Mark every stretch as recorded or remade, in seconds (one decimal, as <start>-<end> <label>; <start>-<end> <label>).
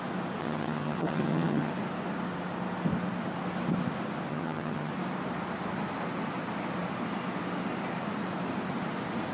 0.0-0.4 recorded; 0.4-1.7 remade; 1.7-4.3 recorded; 4.3-4.9 remade; 4.9-9.3 recorded